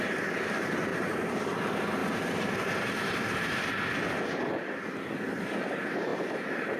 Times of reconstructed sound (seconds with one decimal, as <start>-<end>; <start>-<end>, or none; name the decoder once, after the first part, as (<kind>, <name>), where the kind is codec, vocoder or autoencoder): 0.9-1.5 (vocoder, BigVGAN v2); 2.0-3.7; 6.1-6.8